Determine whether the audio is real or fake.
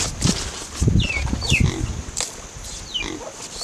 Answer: real